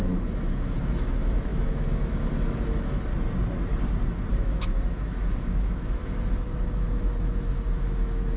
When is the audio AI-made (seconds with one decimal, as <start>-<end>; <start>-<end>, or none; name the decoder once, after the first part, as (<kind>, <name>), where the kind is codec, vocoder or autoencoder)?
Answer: 0.0-3.1 (autoencoder, DAC-VAE); 4.3-8.4